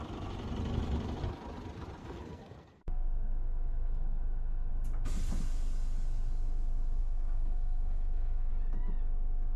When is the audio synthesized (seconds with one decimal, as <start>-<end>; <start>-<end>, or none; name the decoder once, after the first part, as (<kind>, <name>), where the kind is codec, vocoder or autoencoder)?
2.0-4.7 (codec, SNAC); 7.0-8.5